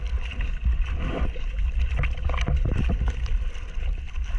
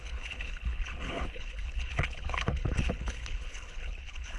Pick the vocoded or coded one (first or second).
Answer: second